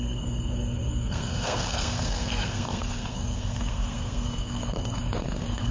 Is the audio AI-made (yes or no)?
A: yes